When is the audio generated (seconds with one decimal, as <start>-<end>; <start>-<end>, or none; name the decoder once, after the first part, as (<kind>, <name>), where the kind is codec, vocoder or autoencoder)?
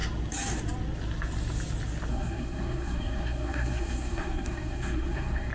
2.1-5.5 (codec, SNAC)